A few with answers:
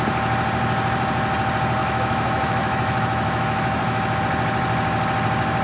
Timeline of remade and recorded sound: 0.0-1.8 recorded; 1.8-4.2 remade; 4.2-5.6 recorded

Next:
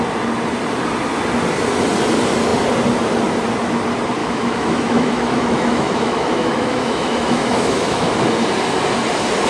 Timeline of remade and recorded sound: 0.0-4.2 recorded; 4.2-8.1 remade; 8.1-9.5 recorded